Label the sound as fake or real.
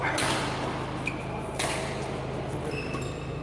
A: real